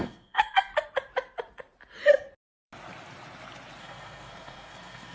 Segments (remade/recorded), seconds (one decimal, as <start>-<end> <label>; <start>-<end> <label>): 0.0-0.7 remade; 0.7-3.8 recorded; 3.8-5.1 remade